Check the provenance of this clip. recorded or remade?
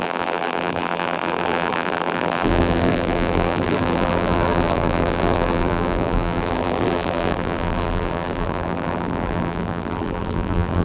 remade